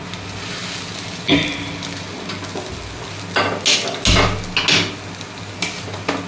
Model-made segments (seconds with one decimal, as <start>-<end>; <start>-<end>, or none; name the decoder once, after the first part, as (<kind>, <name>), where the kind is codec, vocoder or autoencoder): none